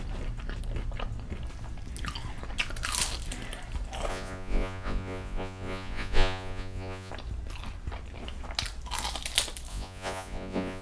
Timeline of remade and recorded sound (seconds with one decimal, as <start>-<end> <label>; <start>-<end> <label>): 0.0-4.1 recorded; 4.1-7.1 remade; 7.1-9.7 recorded; 9.7-10.8 remade